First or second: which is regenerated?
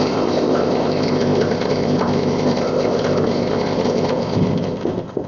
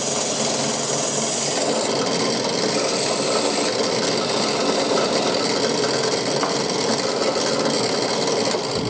first